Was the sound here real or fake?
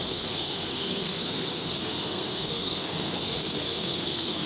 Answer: fake